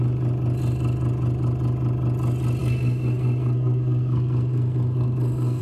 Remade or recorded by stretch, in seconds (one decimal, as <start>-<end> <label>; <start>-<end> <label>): 0.0-2.6 recorded; 2.6-5.6 remade

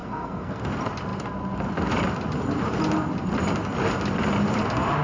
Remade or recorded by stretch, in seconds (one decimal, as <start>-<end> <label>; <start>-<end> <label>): 0.0-0.6 remade; 0.6-5.0 recorded